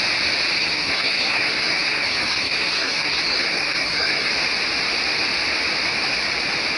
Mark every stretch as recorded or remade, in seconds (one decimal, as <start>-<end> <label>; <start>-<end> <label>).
0.0-0.6 recorded; 0.6-4.3 remade; 4.3-6.8 recorded